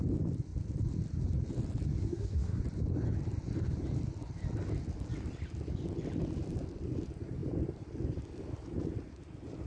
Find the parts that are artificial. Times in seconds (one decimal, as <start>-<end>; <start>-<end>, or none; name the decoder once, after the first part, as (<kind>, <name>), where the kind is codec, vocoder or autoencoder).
2.0-2.6 (codec, SNAC)